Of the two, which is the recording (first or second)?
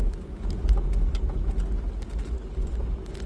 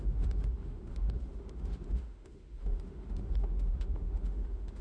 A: first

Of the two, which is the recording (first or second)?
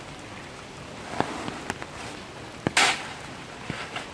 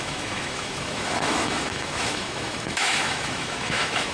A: first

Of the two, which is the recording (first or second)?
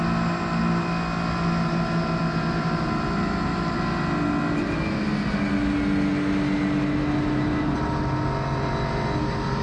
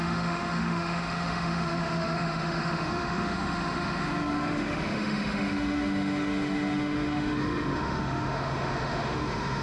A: first